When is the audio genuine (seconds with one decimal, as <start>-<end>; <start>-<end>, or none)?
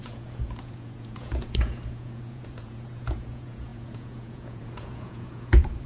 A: none